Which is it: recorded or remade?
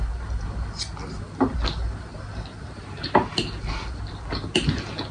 recorded